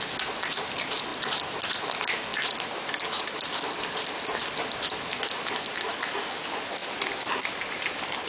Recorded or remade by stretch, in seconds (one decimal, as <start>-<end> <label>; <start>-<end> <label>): 0.0-6.8 recorded; 6.8-8.3 remade